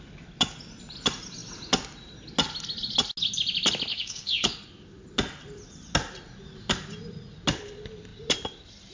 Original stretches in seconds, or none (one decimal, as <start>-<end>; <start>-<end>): 0.0-3.9; 4.5-8.9